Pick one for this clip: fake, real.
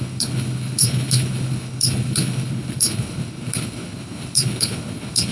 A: fake